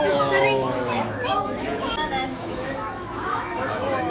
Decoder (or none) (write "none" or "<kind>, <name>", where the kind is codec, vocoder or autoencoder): autoencoder, DAC-VAE